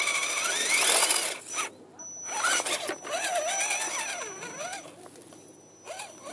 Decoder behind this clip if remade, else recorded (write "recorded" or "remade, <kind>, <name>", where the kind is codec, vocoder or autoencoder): recorded